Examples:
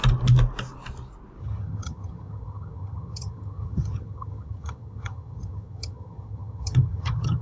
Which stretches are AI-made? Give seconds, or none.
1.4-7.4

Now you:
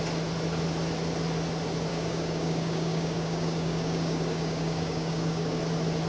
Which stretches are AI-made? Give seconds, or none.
1.9-5.6

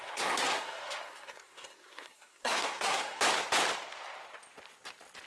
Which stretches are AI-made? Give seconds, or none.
0.0-3.2